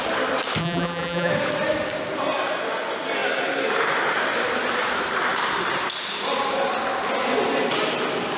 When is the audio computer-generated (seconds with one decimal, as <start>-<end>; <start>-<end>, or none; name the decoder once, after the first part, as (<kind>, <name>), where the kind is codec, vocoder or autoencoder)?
0.6-1.3 (vocoder, BigVGAN v2)